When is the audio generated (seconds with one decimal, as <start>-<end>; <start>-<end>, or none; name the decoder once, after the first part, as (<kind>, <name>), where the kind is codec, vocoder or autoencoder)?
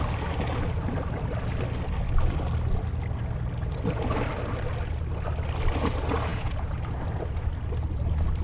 6.3-7.0 (vocoder, Vocos)